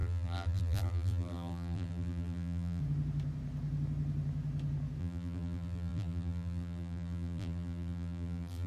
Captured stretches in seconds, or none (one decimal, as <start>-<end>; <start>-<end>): 2.8-5.0